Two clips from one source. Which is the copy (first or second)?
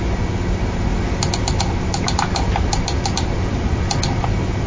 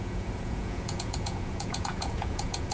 second